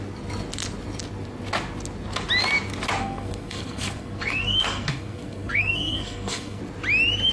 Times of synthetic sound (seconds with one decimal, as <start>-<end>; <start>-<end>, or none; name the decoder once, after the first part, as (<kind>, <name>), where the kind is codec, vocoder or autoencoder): 3.0-6.6 (codec, SNAC)